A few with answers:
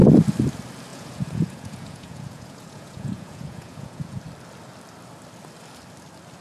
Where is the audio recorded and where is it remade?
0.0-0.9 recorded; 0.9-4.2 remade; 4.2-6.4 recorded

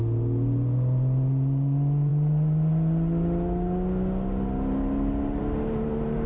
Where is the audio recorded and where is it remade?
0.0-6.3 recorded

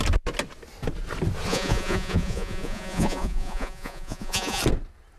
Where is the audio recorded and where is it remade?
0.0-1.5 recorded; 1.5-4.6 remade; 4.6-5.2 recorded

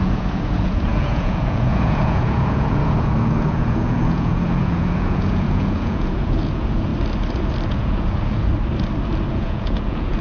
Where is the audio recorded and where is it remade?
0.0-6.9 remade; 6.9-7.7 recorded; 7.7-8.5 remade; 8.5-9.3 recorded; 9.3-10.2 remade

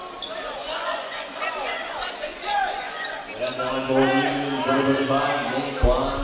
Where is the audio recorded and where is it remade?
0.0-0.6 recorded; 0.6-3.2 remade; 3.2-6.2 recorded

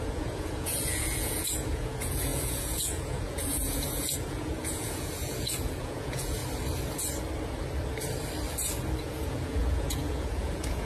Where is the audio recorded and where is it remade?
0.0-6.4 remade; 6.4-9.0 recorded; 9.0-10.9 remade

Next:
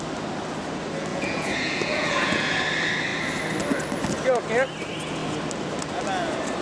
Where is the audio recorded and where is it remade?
0.0-1.1 recorded; 1.1-2.6 remade; 2.6-6.6 recorded

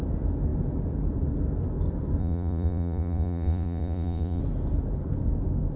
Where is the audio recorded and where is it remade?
0.0-2.2 recorded; 2.2-4.4 remade; 4.4-5.8 recorded